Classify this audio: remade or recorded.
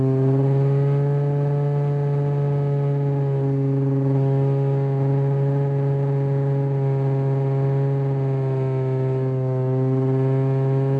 recorded